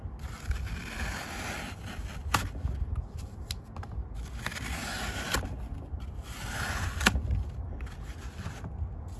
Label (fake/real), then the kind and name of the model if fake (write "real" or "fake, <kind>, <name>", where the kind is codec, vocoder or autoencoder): real